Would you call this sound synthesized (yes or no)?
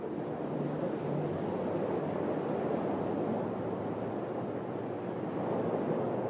no